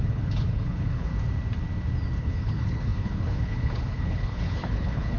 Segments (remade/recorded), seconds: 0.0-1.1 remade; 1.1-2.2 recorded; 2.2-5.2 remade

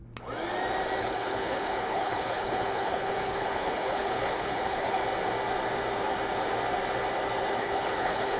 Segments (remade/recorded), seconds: 0.0-1.0 recorded; 1.0-5.0 remade; 5.0-7.6 recorded; 7.6-8.4 remade

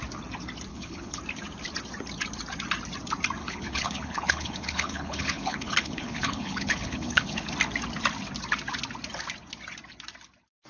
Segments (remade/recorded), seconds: 0.0-0.7 recorded; 0.7-1.2 remade; 1.2-3.4 recorded; 3.4-7.5 remade; 7.5-10.7 recorded

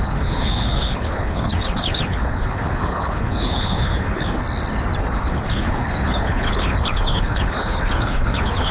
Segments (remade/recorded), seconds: 0.0-4.4 remade; 4.4-5.0 recorded; 5.0-8.7 remade

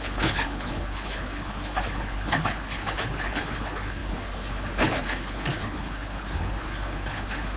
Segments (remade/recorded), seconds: 0.0-7.6 remade

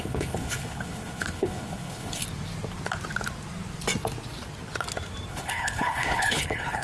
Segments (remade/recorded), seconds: 0.0-2.2 remade; 2.2-5.3 recorded; 5.3-6.8 remade